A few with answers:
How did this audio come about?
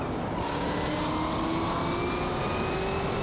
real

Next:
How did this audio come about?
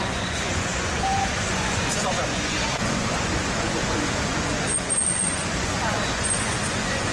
fake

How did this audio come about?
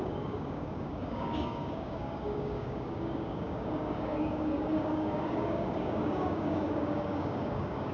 fake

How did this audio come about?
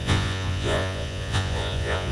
fake